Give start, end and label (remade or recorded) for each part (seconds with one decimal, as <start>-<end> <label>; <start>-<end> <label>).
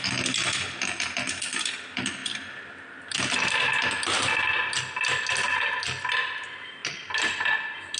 0.0-8.0 recorded